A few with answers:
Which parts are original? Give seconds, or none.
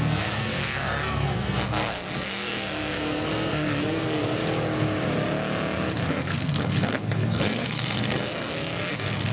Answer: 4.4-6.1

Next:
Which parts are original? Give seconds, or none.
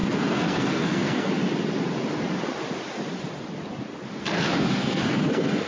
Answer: 1.3-4.2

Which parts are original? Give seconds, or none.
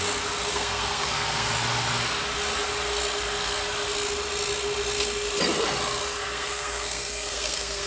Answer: 0.0-0.5; 1.5-6.2